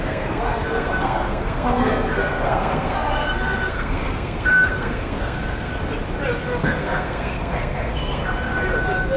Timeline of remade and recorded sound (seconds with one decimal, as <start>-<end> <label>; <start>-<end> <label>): 0.0-5.7 remade; 5.7-6.6 recorded; 6.6-8.2 remade; 8.2-9.2 recorded